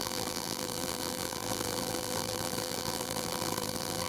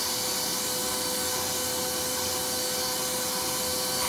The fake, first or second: first